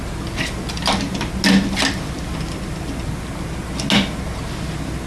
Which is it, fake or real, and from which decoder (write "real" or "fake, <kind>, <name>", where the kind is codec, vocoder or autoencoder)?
real